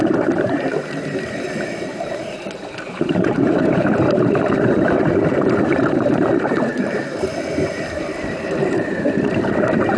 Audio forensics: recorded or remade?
remade